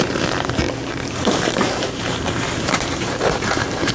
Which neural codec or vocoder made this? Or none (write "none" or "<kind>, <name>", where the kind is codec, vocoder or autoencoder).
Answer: vocoder, BigVGAN v2